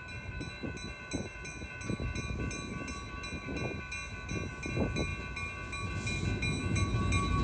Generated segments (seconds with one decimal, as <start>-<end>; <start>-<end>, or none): none